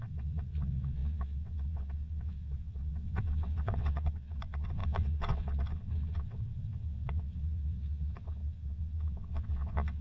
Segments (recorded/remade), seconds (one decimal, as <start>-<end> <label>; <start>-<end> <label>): 0.0-10.0 remade